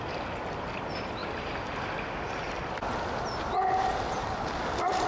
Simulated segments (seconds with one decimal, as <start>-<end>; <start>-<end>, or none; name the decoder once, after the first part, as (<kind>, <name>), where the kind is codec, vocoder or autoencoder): none